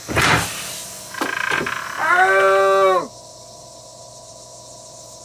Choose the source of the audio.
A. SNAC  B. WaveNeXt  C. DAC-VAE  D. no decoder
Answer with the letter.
D